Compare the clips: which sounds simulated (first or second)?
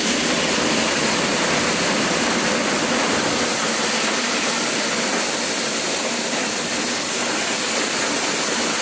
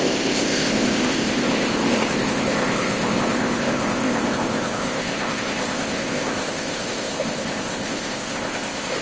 second